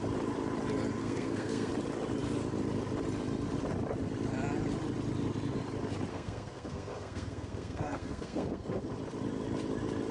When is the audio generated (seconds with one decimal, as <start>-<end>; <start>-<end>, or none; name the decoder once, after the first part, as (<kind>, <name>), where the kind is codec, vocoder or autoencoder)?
1.0-1.7 (codec, SNAC); 6.1-8.8